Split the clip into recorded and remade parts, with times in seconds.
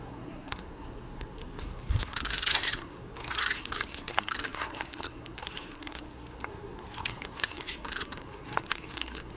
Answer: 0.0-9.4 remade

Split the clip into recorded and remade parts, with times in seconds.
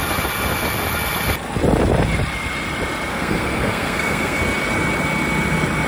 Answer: 0.0-3.1 recorded; 3.1-4.4 remade; 4.4-5.9 recorded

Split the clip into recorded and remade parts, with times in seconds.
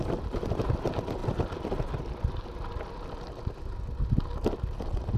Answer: 0.0-5.2 recorded